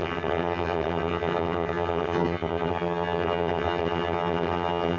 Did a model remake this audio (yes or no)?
yes